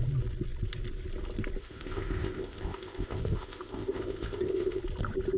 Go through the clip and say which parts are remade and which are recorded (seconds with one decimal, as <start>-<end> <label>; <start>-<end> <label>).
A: 0.0-1.6 recorded; 1.6-4.8 remade; 4.8-5.4 recorded